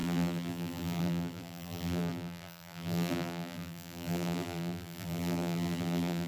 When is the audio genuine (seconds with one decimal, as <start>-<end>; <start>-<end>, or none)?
none